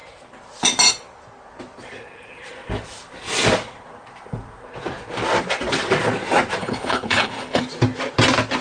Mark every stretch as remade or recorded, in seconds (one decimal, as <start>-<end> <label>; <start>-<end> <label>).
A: 0.0-6.6 recorded; 6.6-7.6 remade; 7.6-8.6 recorded